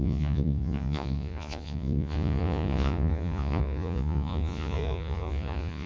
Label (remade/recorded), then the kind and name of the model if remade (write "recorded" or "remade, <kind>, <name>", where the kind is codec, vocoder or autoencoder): remade, vocoder, Vocos